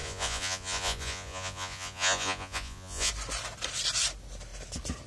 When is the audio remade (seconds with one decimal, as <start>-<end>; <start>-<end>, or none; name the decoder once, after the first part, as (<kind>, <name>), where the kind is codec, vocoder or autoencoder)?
0.0-3.1 (vocoder, Vocos)